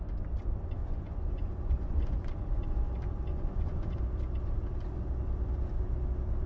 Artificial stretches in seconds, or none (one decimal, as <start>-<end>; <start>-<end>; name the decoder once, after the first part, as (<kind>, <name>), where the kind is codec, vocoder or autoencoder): 0.8-2.3 (vocoder, Vocos); 3.3-4.0